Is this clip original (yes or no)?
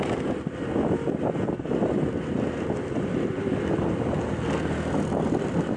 yes